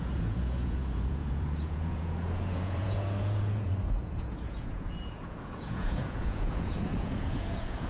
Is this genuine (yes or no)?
no